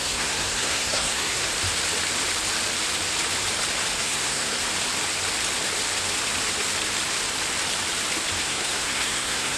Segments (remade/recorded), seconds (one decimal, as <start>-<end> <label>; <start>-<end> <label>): 0.0-1.5 remade; 1.5-4.0 recorded; 4.0-4.6 remade; 4.6-8.4 recorded; 8.4-9.6 remade